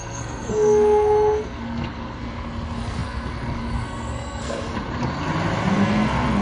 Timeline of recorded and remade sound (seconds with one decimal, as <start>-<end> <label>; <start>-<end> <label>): 0.0-4.7 remade; 4.7-5.7 recorded; 5.7-6.4 remade